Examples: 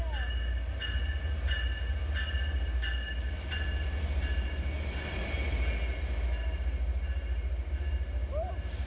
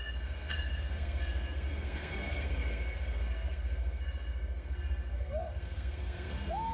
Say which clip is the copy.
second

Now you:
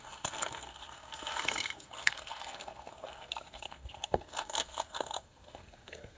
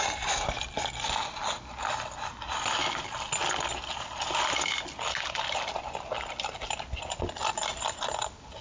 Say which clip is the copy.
first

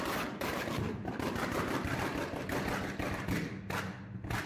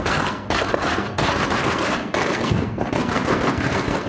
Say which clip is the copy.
second